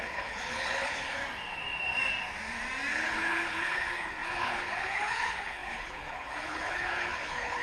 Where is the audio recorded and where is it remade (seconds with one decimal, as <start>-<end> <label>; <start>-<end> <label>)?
0.0-1.2 remade; 1.2-2.9 recorded; 2.9-7.6 remade